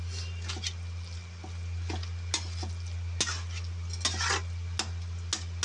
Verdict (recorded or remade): recorded